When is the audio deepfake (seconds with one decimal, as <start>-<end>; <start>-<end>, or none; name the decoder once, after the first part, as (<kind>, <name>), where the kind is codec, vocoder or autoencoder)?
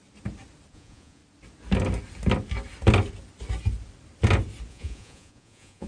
0.7-1.2 (vocoder, Vocos); 4.7-5.9